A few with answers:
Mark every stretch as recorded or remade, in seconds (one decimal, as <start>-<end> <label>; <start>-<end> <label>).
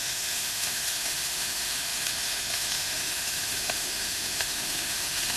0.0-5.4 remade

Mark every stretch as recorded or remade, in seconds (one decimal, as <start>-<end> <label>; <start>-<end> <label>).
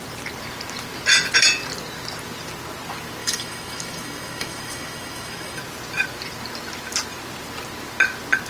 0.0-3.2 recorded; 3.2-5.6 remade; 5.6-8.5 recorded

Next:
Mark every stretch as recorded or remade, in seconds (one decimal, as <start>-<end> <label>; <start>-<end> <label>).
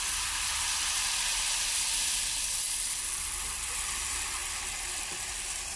0.0-5.8 recorded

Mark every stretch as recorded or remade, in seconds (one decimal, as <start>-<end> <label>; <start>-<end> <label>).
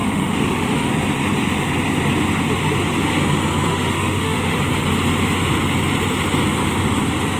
0.0-0.9 remade; 0.9-3.7 recorded; 3.7-4.6 remade; 4.6-7.4 recorded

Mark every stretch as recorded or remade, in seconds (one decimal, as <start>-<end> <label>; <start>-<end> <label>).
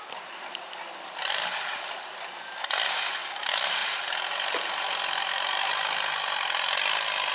0.0-7.3 recorded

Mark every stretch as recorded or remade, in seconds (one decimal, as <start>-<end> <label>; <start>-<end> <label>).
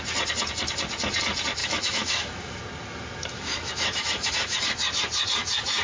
0.0-1.6 recorded; 1.6-2.6 remade; 2.6-3.2 recorded; 3.2-4.6 remade; 4.6-5.8 recorded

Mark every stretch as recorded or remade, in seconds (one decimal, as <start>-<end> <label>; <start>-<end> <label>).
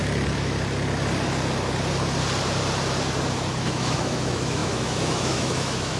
0.0-3.6 recorded; 3.6-6.0 remade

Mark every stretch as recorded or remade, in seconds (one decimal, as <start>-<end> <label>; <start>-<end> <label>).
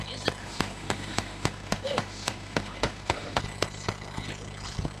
0.0-0.4 recorded; 0.4-3.4 remade; 3.4-5.0 recorded